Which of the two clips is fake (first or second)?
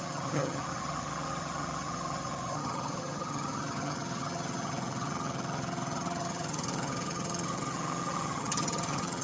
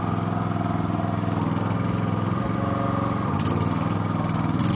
first